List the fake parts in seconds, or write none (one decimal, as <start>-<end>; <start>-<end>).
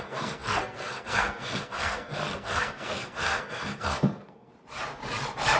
0.0-4.5